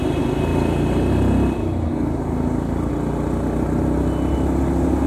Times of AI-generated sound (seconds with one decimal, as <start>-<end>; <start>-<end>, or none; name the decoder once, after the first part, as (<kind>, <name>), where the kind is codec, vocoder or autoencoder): 1.6-2.9 (codec, DAC)